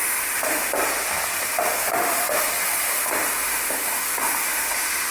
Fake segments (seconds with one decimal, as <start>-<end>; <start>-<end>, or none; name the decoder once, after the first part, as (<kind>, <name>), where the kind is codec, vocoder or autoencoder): 0.0-0.7 (autoencoder, DAC-VAE); 1.5-2.5; 2.9-5.1